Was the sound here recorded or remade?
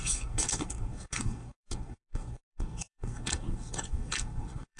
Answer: remade